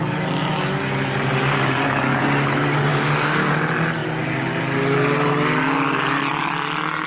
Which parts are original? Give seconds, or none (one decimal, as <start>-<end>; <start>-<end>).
0.0-2.9; 3.5-7.1